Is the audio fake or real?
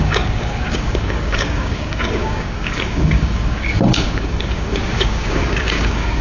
fake